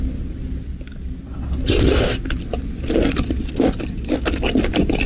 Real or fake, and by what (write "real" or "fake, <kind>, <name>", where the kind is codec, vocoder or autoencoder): real